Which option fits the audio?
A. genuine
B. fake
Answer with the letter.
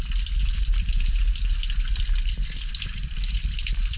A